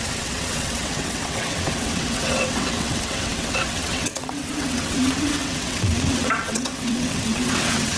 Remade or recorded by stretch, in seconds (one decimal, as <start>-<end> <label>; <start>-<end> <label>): 0.0-8.0 remade